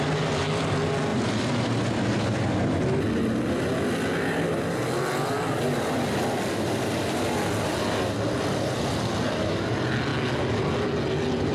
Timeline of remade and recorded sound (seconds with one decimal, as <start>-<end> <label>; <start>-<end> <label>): 0.0-11.5 recorded